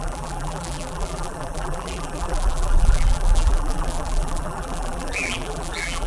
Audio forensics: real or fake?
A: fake